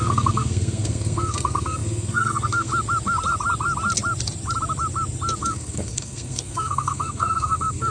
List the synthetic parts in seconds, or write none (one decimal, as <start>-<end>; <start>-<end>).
0.0-2.7; 5.4-7.9